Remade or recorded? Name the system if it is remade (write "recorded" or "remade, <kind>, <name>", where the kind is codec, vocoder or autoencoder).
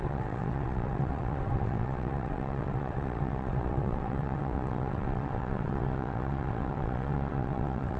remade, vocoder, WaveNeXt